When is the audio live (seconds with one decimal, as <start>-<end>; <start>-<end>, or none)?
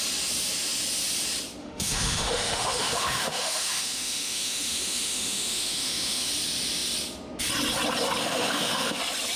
0.0-1.6; 6.3-8.2; 9.0-9.4